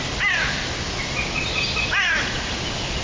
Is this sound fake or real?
real